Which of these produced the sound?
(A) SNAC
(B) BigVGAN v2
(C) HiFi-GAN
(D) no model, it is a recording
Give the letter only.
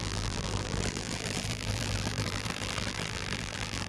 B